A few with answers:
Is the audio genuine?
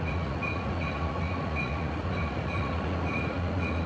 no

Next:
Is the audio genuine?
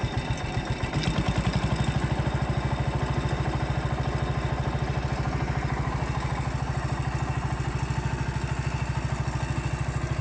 yes